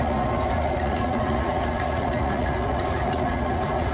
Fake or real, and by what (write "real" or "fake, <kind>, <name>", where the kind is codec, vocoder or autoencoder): fake, vocoder, Vocos